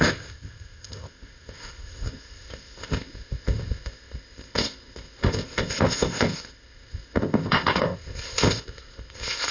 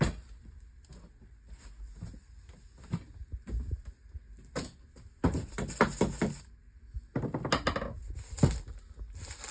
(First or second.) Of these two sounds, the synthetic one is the first